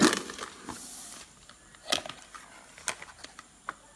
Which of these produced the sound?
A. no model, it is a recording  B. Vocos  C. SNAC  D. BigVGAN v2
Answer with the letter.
A